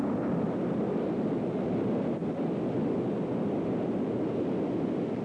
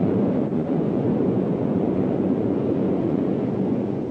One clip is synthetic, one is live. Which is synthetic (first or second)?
second